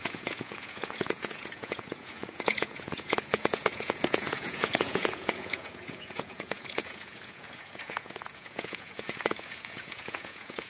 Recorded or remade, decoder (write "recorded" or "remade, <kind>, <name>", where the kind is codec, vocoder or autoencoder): remade, vocoder, Vocos